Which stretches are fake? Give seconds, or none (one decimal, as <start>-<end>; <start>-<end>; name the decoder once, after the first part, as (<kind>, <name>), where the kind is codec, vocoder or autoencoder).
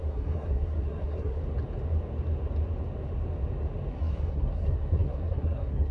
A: 0.0-1.4 (codec, SNAC); 3.9-5.9